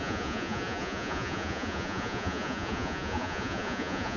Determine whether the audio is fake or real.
fake